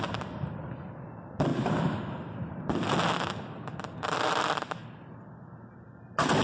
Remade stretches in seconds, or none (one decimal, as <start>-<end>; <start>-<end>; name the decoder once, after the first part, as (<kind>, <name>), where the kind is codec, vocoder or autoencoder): none